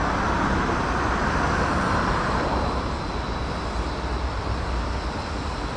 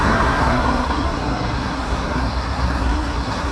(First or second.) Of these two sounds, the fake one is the second